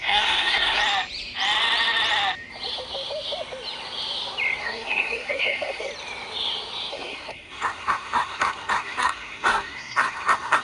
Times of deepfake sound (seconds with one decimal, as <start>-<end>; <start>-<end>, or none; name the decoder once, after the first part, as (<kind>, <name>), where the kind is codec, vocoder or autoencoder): 0.0-0.8 (codec, SNAC); 4.6-5.9; 6.9-10.6

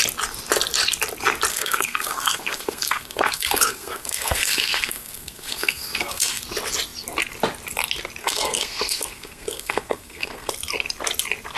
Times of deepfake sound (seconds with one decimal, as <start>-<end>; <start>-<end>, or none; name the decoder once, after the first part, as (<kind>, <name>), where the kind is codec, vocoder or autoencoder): 1.5-6.4 (codec, SNAC); 8.2-10.5

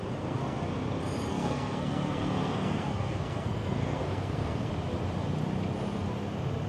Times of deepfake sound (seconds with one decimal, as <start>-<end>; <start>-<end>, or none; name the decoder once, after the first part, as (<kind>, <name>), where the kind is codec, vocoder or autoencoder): 0.0-0.6 (codec, SNAC); 1.3-4.7